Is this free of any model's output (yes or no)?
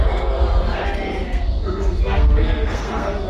no